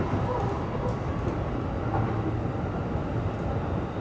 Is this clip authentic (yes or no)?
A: yes